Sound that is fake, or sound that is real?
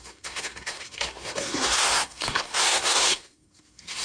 fake